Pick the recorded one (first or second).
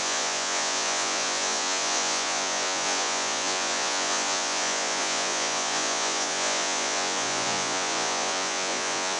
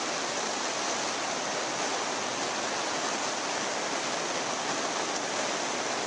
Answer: second